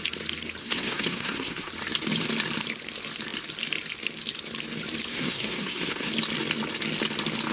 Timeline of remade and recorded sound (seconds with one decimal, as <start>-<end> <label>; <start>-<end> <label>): 0.0-0.6 recorded; 0.6-1.7 remade; 1.7-5.1 recorded; 5.1-6.1 remade; 6.1-7.5 recorded

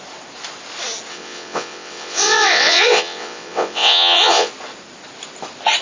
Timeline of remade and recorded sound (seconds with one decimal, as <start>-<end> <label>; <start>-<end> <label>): 0.0-1.1 recorded; 1.1-4.5 remade; 4.5-5.8 recorded

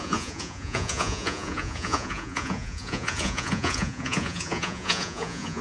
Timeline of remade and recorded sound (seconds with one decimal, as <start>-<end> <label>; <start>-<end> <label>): 0.0-5.6 remade

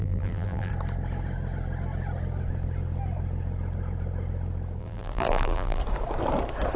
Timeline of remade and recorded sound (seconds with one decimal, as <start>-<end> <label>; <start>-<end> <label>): 0.0-0.7 remade; 0.7-4.8 recorded; 4.8-5.8 remade; 5.8-6.8 recorded

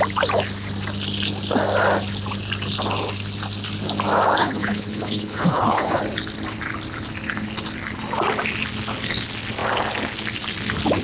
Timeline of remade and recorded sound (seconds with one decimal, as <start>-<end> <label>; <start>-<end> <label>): 0.0-4.4 recorded; 4.4-6.0 remade; 6.0-11.0 recorded